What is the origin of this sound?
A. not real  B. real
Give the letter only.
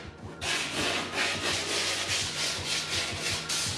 A